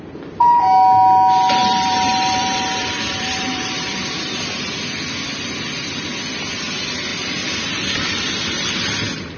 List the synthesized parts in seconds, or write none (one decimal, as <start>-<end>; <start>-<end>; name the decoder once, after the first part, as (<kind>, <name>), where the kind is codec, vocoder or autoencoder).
1.6-3.9 (vocoder, BigVGAN v2)